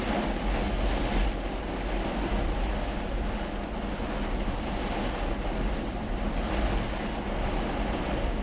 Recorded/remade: recorded